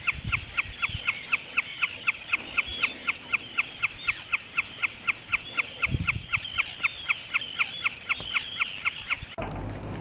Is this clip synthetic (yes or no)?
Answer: no